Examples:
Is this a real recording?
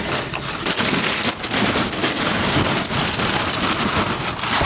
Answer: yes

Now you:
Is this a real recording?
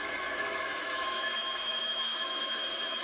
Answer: no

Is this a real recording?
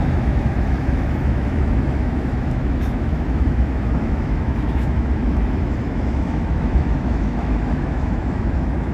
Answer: no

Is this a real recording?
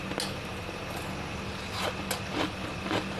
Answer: yes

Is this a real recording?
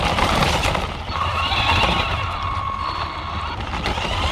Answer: yes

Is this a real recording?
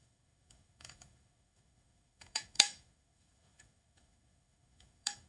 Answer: no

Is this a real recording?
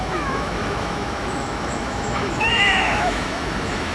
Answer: no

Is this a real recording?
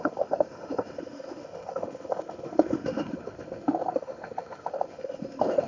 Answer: no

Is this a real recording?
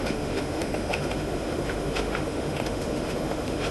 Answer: no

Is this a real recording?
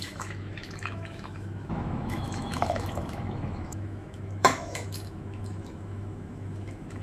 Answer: no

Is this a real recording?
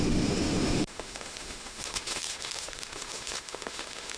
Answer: no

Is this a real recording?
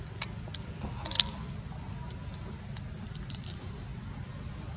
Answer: yes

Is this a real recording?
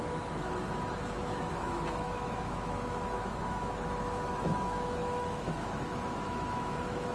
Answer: no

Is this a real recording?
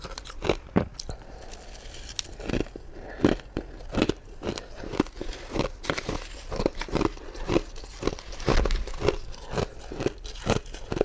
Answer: yes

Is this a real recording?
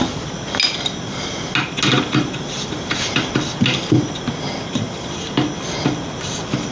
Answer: yes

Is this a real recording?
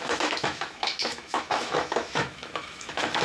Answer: no